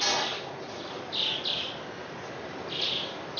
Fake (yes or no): no